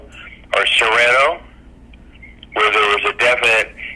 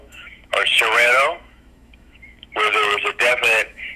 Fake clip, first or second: second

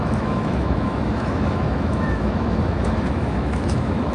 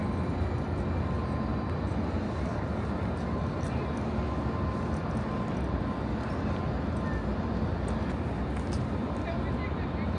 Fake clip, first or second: first